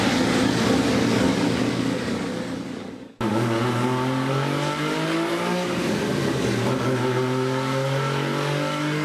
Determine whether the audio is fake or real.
fake